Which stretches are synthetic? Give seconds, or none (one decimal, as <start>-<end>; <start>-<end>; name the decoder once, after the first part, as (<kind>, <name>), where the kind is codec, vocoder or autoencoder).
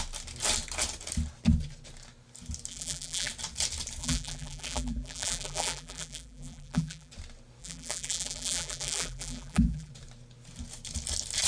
2.7-3.3 (vocoder, BigVGAN v2); 4.0-7.1; 7.6-9.9